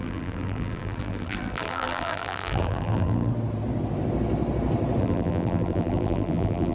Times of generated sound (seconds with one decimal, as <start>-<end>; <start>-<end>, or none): 0.0-3.3; 5.0-6.7